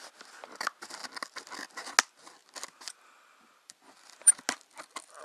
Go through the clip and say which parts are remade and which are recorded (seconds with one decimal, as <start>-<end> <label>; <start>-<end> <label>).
0.0-5.2 recorded